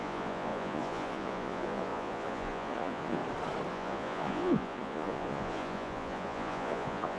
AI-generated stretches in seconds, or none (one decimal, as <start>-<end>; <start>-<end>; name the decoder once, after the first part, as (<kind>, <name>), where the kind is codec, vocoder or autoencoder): 0.0-3.2 (vocoder, Vocos); 3.7-7.2